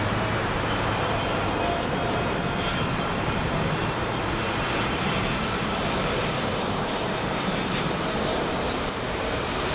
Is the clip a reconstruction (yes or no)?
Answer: yes